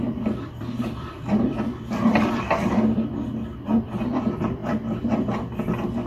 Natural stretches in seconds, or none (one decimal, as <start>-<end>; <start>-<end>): 4.6-6.1